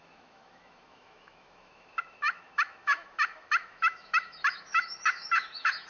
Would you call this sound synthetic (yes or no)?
yes